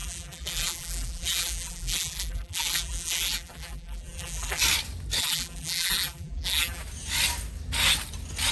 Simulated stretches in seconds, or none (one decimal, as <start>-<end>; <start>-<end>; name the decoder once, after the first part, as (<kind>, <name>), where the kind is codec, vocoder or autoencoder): 0.0-4.6 (vocoder, BigVGAN v2); 5.2-6.8